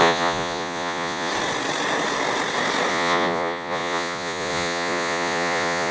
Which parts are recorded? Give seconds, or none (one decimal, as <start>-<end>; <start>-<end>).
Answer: 1.3-2.9